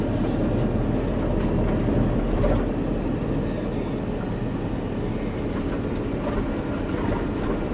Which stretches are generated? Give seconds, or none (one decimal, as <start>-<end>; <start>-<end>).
none